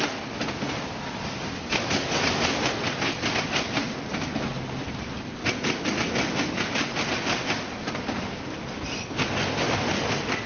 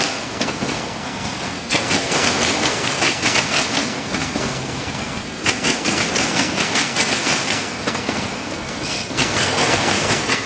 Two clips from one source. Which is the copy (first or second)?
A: second